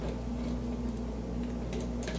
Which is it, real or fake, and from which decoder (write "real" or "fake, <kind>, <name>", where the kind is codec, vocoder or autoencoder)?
real